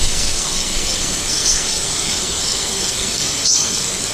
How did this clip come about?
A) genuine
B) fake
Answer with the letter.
B